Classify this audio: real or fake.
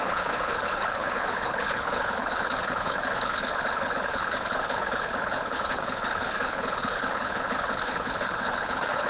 fake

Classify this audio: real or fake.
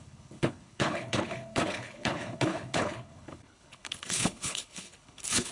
fake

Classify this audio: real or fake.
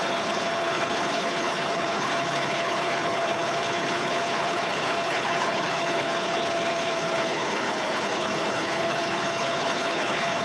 fake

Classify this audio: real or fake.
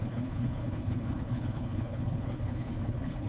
fake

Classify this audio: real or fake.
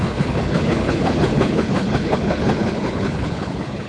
fake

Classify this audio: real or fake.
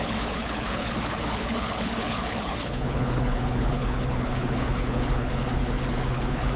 fake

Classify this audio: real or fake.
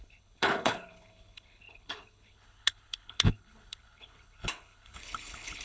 fake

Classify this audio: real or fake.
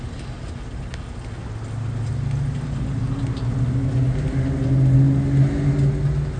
real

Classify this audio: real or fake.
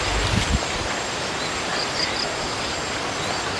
real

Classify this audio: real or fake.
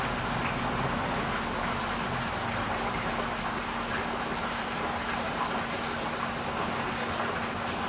real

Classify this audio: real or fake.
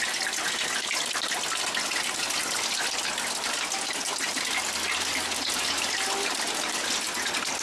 real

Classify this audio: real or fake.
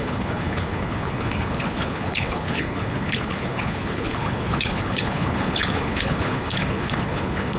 fake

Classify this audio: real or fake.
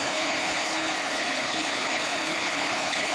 fake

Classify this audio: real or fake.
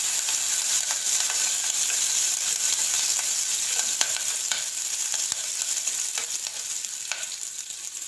real